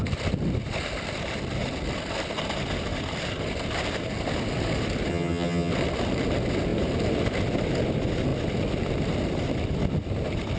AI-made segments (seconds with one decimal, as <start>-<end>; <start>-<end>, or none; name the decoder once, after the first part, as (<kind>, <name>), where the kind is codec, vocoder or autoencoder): 5.1-5.7 (vocoder, HiFi-GAN)